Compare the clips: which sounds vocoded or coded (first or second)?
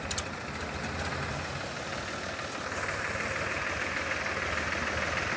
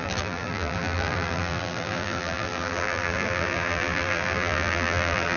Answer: second